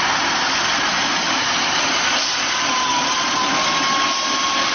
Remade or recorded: recorded